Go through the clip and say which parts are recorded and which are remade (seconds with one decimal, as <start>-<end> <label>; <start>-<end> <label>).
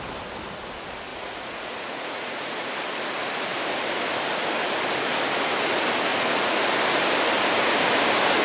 0.0-1.1 recorded; 1.1-2.7 remade; 2.7-6.1 recorded; 6.1-6.7 remade; 6.7-8.4 recorded